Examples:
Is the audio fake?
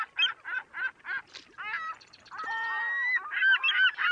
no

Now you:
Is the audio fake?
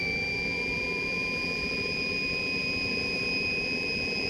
yes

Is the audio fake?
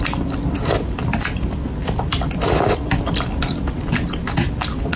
no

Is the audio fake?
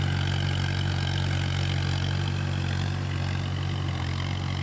no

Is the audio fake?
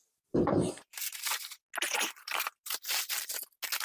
no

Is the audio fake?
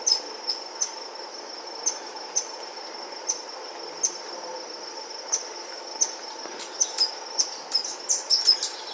no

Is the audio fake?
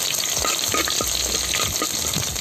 no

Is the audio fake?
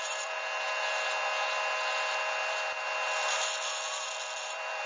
no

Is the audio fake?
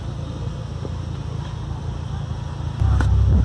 no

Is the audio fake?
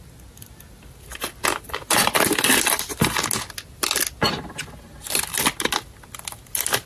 no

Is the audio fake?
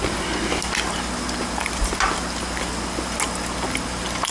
no